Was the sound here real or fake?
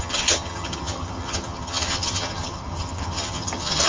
fake